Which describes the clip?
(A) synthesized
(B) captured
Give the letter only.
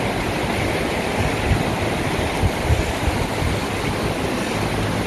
B